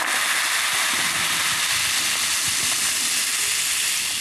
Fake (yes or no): no